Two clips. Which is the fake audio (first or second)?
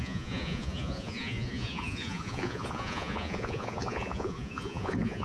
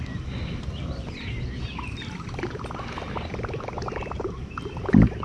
first